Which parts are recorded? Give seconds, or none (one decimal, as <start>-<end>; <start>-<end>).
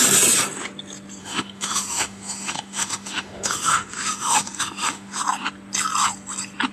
0.0-1.2; 5.2-6.7